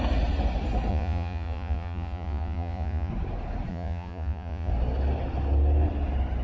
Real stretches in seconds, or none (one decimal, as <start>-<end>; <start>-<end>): 0.0-0.9; 3.1-3.7; 4.7-6.4